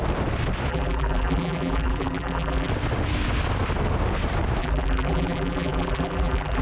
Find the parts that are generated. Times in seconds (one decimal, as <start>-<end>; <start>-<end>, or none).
0.7-2.7; 4.6-6.6